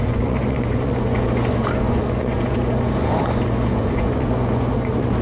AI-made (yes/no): yes